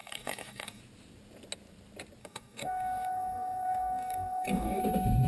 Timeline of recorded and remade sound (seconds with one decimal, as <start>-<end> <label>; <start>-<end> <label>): 0.0-0.8 remade; 0.8-2.2 recorded; 2.2-4.8 remade; 4.8-5.3 recorded